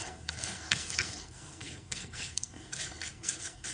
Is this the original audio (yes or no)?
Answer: no